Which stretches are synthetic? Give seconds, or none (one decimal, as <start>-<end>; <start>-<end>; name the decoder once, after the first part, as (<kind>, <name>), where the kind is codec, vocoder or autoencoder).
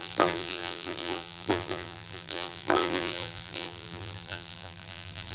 0.0-5.3 (vocoder, BigVGAN v2)